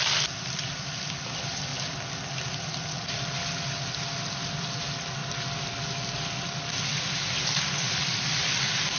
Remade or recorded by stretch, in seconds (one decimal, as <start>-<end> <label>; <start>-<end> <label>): 0.0-1.7 remade; 1.7-4.2 recorded; 4.2-5.2 remade; 5.2-7.4 recorded; 7.4-9.0 remade